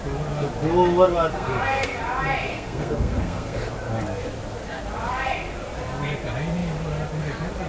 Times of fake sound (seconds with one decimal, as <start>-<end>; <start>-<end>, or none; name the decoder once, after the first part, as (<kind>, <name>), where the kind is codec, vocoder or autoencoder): 1.3-2.0 (codec, SNAC); 2.5-3.7